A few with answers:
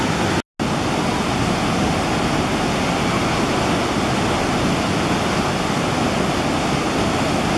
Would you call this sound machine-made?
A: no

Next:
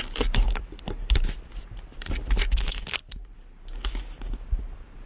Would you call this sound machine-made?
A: no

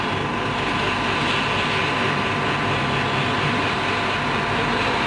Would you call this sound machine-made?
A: no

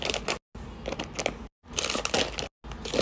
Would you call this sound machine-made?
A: no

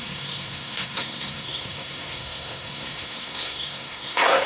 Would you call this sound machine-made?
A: yes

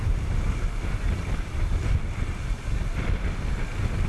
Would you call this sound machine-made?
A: no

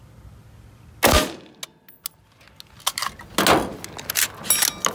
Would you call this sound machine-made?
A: no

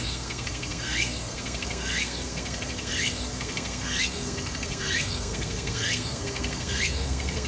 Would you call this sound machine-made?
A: yes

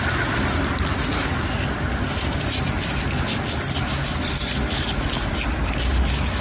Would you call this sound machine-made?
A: yes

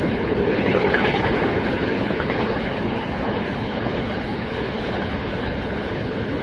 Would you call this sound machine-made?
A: yes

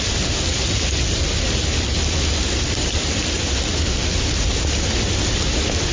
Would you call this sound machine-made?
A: no